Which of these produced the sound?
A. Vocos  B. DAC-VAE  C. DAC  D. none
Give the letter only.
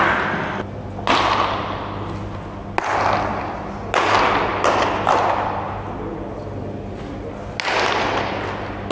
D